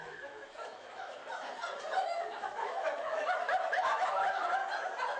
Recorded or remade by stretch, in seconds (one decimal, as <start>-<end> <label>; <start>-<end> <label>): 0.0-1.2 remade; 1.2-2.0 recorded; 2.0-4.6 remade; 4.6-5.2 recorded